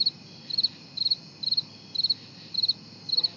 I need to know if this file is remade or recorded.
recorded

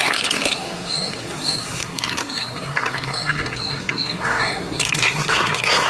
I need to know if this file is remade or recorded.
remade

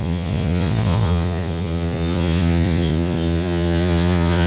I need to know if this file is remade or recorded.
remade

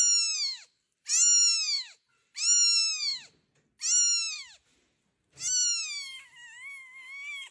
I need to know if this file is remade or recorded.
recorded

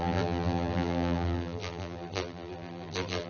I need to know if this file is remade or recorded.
remade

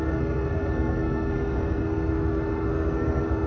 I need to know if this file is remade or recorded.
remade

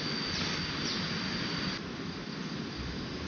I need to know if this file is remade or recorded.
recorded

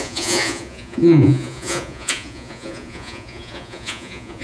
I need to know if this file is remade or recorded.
remade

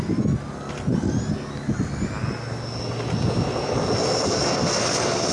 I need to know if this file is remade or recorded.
recorded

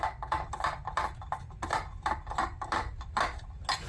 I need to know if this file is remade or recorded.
recorded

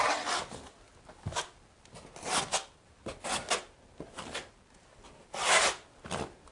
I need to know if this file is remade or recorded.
recorded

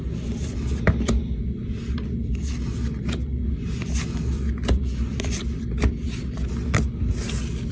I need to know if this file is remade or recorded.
recorded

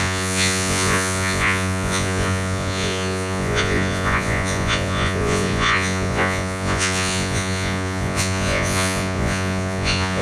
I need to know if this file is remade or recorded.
remade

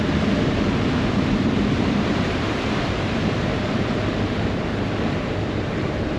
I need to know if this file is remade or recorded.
remade